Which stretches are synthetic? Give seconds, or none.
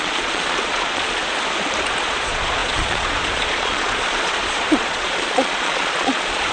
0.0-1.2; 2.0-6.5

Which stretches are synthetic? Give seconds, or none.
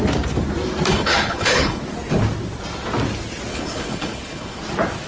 0.9-1.8; 3.5-4.6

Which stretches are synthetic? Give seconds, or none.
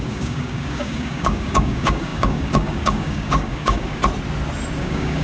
0.0-4.0; 4.8-5.2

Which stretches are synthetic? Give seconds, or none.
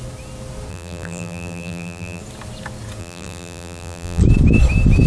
0.7-2.2; 3.0-4.2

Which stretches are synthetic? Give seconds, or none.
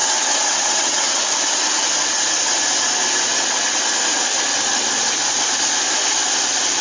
0.0-1.2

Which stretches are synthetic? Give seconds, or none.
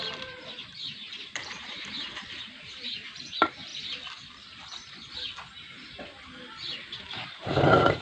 0.0-3.7; 7.0-8.0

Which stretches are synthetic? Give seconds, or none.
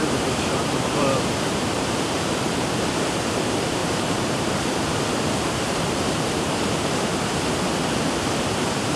0.0-7.1; 8.4-9.0